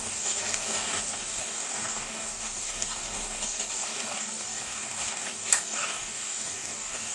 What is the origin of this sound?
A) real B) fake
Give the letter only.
B